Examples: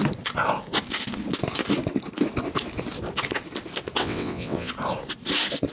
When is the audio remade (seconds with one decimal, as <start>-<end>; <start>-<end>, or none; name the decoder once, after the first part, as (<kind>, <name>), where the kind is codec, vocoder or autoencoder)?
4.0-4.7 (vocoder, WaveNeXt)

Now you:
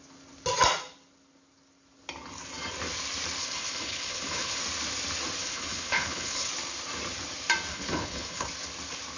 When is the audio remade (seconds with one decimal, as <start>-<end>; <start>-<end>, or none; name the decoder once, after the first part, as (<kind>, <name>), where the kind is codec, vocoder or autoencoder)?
3.4-4.6 (codec, HILCodec); 5.4-6.5; 7.7-8.5

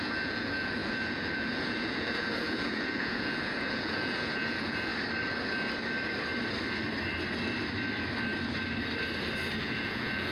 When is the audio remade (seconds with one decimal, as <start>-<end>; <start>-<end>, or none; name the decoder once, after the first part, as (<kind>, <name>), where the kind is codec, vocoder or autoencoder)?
0.0-4.9 (vocoder, Vocos); 9.6-10.3